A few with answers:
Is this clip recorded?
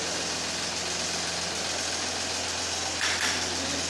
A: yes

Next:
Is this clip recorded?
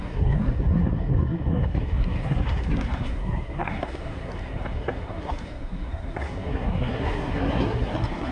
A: no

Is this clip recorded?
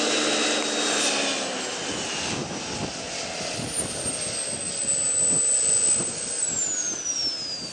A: yes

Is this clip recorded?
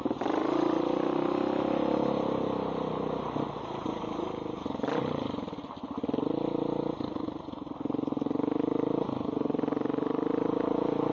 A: yes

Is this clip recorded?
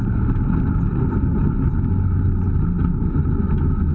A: yes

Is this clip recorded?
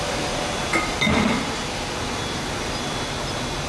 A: yes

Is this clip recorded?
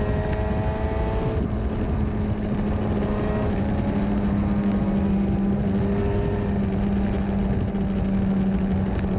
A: yes